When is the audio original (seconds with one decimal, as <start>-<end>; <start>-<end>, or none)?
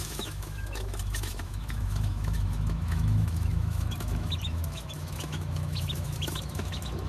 none